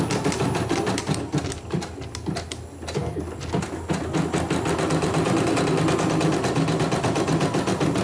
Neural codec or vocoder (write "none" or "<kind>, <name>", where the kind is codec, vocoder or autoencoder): none